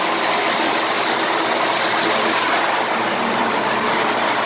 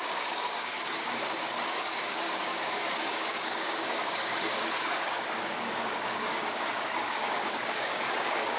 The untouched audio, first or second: first